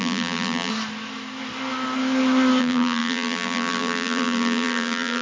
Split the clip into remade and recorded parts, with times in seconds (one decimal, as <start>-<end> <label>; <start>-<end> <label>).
0.0-0.7 remade; 0.7-2.6 recorded; 2.6-5.2 remade